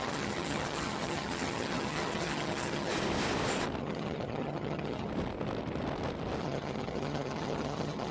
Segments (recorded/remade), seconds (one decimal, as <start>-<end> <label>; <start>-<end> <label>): 0.0-2.9 remade; 2.9-3.8 recorded; 3.8-5.1 remade; 5.1-6.4 recorded; 6.4-8.1 remade